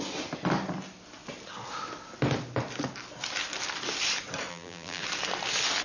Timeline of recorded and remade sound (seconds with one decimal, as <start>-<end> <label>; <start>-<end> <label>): 0.0-4.5 recorded; 4.5-5.0 remade; 5.0-5.8 recorded